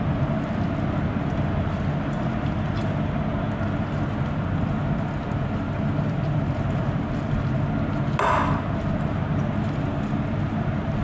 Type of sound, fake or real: real